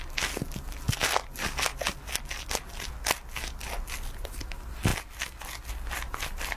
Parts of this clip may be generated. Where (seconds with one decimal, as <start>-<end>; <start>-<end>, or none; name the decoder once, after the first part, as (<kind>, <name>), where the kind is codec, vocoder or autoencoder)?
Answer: none